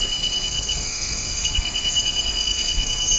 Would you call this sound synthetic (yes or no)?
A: yes